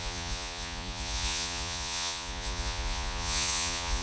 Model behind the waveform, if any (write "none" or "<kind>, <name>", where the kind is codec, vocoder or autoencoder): vocoder, Vocos